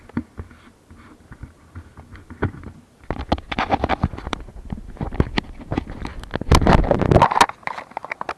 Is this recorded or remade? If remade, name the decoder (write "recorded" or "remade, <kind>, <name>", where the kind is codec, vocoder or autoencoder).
recorded